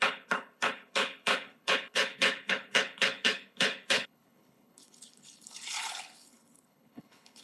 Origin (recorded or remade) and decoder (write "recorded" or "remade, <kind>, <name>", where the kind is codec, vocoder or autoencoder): remade, codec, HILCodec